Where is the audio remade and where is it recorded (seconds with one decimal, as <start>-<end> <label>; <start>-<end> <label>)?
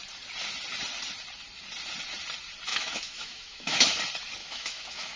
0.0-2.7 recorded; 2.7-4.0 remade; 4.0-4.4 recorded; 4.4-5.2 remade